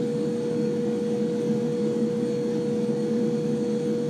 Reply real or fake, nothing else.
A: fake